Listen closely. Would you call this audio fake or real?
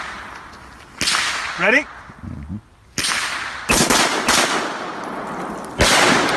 real